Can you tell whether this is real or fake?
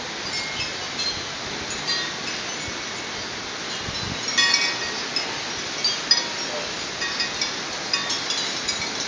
real